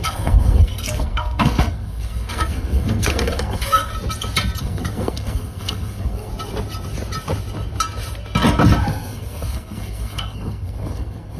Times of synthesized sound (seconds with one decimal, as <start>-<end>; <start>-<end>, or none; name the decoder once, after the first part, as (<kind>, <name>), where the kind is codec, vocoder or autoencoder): 0.0-3.9 (codec, SNAC); 4.6-6.3; 8.9-11.4